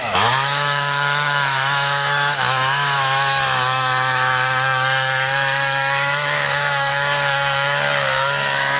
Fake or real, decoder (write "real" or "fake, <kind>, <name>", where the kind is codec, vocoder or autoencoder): fake, autoencoder, DAC-VAE